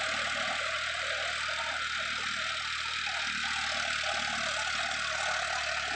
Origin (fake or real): real